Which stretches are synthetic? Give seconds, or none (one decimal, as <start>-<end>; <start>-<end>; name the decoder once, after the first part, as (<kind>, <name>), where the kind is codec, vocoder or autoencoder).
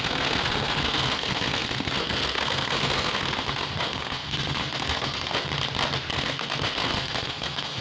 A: 0.0-5.5 (codec, SNAC); 6.1-7.8